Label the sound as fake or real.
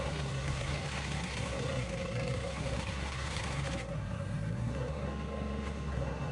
fake